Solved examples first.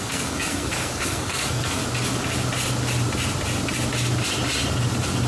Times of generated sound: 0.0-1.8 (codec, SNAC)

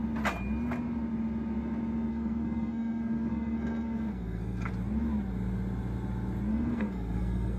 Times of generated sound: 2.1-4.7 (codec, SNAC); 6.5-7.6